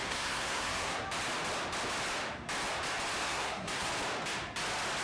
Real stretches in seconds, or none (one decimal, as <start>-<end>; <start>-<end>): 1.0-3.2; 3.9-5.0